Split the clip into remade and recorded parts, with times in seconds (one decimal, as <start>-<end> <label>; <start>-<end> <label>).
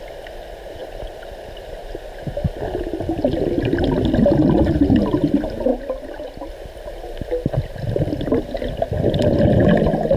0.0-10.2 recorded